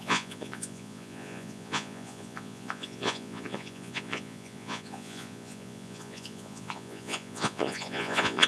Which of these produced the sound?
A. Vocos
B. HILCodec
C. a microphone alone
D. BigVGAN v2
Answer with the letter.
A